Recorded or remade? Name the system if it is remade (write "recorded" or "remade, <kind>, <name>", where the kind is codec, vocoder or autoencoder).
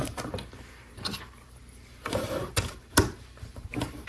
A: remade, vocoder, BigVGAN v2